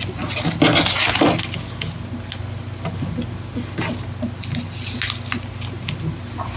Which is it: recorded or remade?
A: recorded